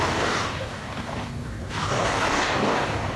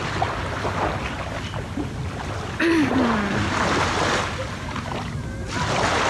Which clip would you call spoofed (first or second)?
first